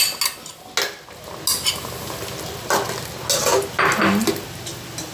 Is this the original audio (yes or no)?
yes